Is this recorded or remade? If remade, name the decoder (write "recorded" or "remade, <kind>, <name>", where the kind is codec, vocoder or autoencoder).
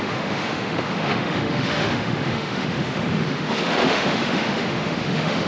remade, autoencoder, DAC-VAE